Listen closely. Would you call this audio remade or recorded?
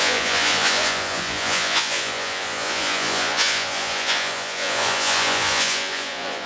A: remade